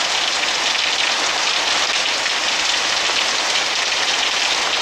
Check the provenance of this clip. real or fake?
real